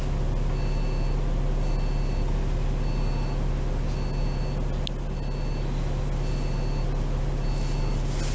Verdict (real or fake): real